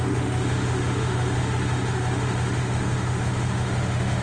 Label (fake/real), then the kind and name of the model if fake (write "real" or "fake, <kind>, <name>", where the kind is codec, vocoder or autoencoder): fake, autoencoder, DAC-VAE